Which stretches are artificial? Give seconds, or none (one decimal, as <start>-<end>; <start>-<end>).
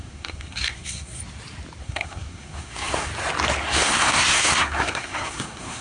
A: 0.0-1.2; 1.8-3.1; 3.6-5.8